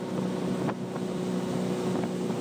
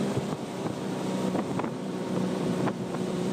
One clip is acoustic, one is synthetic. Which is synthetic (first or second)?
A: second